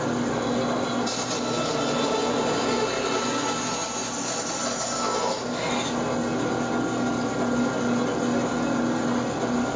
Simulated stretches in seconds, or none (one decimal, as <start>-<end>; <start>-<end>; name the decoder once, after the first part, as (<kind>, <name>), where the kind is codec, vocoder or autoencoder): none